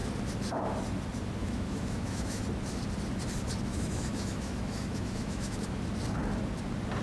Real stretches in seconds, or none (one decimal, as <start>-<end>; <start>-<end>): 0.0-1.4; 2.4-3.7; 5.8-7.0